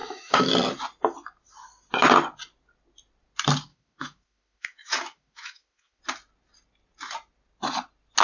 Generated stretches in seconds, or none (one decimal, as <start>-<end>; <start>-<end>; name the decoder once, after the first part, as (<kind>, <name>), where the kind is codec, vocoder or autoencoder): 0.0-0.5 (autoencoder, DAC-VAE); 3.7-6.0